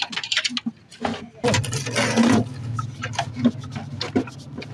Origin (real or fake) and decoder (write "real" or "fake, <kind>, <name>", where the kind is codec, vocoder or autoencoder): real